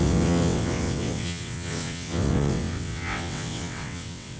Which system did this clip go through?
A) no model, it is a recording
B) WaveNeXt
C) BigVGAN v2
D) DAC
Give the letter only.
B